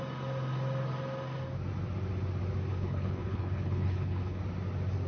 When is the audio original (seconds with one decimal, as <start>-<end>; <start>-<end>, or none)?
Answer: 0.0-2.7; 4.4-5.1